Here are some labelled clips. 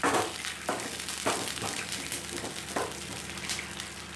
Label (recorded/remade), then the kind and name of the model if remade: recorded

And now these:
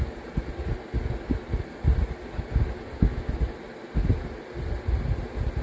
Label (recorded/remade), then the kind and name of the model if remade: recorded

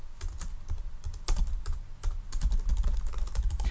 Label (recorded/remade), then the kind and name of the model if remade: recorded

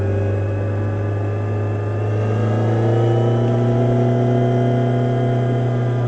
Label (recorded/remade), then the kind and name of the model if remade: recorded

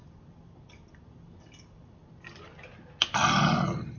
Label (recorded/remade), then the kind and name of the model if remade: recorded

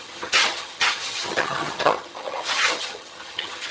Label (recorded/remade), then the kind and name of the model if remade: remade, vocoder, HiFi-GAN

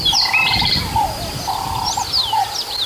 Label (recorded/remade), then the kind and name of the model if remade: recorded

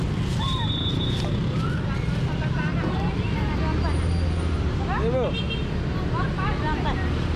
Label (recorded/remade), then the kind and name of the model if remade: recorded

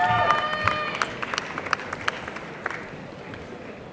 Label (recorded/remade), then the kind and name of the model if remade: recorded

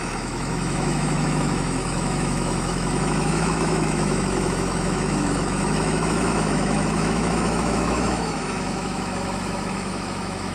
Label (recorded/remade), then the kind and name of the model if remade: remade, autoencoder, DAC-VAE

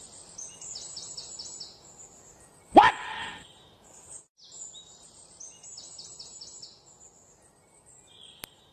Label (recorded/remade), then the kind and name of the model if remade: recorded